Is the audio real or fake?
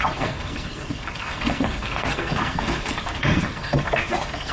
fake